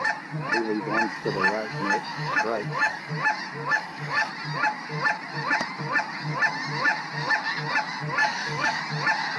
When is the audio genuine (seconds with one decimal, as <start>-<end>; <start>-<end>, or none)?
0.0-1.1; 3.1-3.7; 4.3-8.2; 8.8-9.4